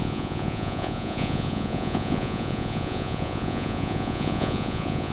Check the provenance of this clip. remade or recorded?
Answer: remade